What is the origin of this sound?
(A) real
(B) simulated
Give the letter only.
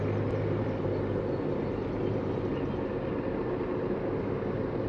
A